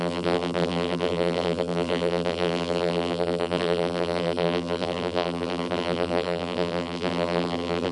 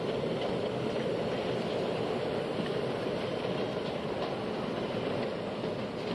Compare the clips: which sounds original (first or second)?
second